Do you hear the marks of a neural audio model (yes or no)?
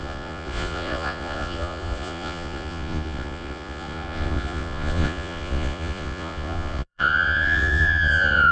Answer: yes